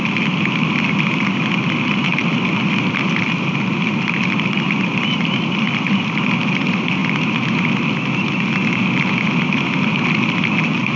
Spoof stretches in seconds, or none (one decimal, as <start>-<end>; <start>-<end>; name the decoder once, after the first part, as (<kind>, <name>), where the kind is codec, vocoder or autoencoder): none